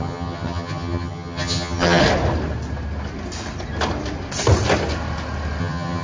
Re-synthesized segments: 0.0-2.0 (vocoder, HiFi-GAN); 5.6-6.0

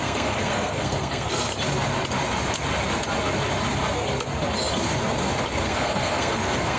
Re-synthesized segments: 0.0-1.5 (codec, SNAC); 5.6-6.8

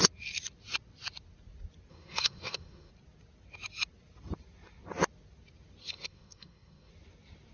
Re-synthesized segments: 1.9-2.9 (codec, SNAC); 5.8-6.9

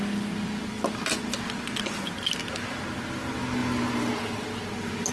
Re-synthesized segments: none

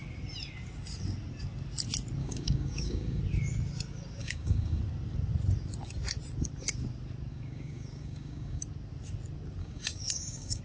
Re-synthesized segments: 2.2-3.2 (codec, DAC); 4.2-4.8; 7.3-8.6; 9.6-10.6

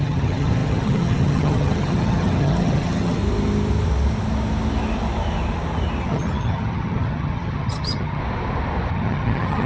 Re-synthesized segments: 0.0-3.2 (vocoder, HiFi-GAN); 6.0-8.2; 8.9-9.7